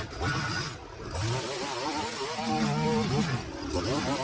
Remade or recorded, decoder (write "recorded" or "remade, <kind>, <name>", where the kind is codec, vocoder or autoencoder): recorded